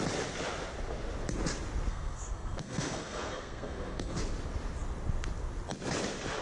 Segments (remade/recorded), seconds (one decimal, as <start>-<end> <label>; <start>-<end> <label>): 0.0-1.9 recorded; 1.9-4.2 remade; 4.2-6.4 recorded